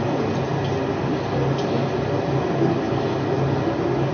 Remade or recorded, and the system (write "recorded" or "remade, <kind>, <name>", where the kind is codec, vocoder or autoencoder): recorded